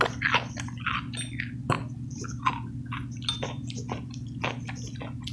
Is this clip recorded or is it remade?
recorded